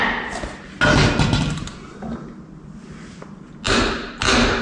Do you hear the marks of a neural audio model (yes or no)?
no